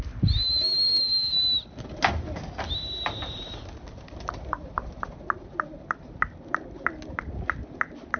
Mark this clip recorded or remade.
recorded